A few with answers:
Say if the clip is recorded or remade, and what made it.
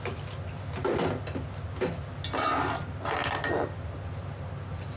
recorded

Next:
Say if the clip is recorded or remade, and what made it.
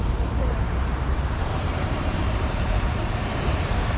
remade, vocoder, BigVGAN v2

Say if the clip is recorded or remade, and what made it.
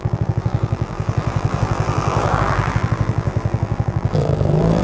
remade, vocoder, BigVGAN v2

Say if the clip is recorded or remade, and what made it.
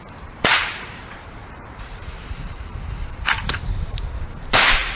remade, vocoder, BigVGAN v2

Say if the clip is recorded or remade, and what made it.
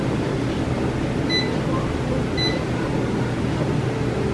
recorded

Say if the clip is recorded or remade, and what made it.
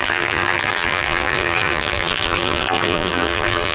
remade, vocoder, BigVGAN v2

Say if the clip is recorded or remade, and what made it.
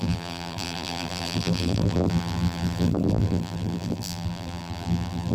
remade, vocoder, BigVGAN v2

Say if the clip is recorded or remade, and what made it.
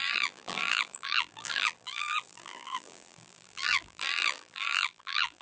remade, vocoder, BigVGAN v2